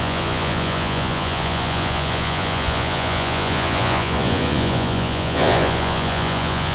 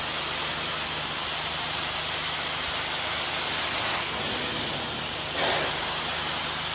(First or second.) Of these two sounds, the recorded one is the second